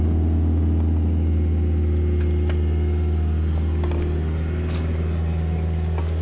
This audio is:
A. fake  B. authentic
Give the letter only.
B